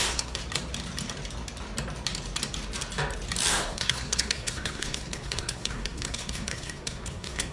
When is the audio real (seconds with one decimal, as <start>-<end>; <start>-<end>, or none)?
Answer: 0.4-3.5